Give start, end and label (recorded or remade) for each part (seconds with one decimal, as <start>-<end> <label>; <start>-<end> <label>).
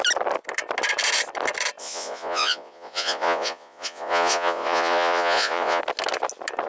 0.0-1.8 recorded; 1.8-5.8 remade; 5.8-6.7 recorded